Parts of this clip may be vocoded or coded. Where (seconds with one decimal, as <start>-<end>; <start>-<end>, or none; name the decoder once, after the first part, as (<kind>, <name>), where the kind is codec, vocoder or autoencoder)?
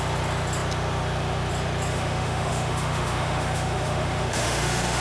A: 1.9-5.0 (autoencoder, DAC-VAE)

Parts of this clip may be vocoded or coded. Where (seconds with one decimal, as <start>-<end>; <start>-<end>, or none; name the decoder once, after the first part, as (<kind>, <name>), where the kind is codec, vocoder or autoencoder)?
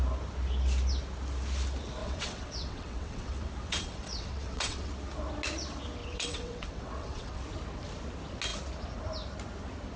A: 2.0-4.9 (vocoder, WaveNeXt); 6.0-7.4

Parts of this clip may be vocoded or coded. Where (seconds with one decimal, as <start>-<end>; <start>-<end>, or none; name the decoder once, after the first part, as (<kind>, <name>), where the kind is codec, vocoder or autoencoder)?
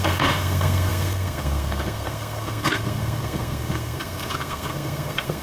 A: 0.0-5.4 (codec, SNAC)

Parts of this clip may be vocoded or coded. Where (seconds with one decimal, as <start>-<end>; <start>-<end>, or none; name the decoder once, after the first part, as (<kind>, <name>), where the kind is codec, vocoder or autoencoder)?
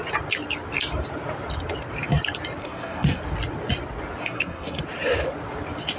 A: 2.6-3.2 (codec, SNAC); 4.2-4.8